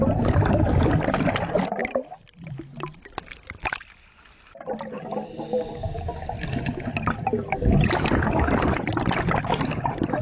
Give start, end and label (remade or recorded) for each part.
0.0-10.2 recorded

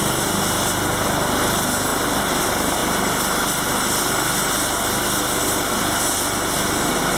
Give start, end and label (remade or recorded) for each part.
0.0-7.2 recorded

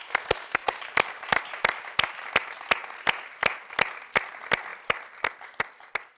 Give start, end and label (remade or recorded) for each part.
0.0-0.6 recorded; 0.6-1.5 remade; 1.5-6.2 recorded

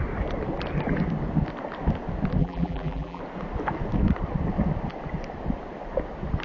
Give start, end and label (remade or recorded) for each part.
0.0-2.4 recorded; 2.4-3.2 remade; 3.2-6.4 recorded

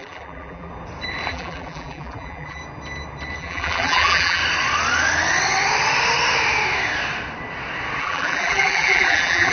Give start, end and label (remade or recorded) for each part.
0.0-0.7 remade; 0.7-1.3 recorded; 1.3-2.6 remade; 2.6-3.4 recorded; 3.4-4.4 remade; 4.4-8.0 recorded; 8.0-9.5 remade